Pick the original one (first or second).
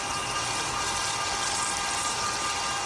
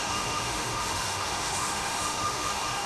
first